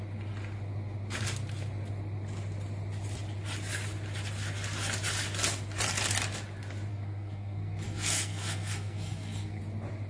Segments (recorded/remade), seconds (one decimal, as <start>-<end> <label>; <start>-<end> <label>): 0.0-6.9 recorded; 6.9-9.6 remade; 9.6-10.1 recorded